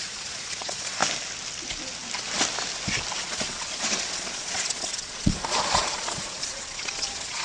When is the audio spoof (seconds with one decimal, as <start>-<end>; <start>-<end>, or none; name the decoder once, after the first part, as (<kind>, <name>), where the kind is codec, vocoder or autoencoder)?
0.0-1.0 (vocoder, Vocos); 3.2-7.4